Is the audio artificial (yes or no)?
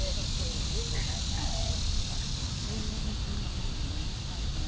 no